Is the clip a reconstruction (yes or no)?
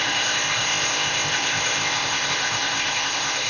yes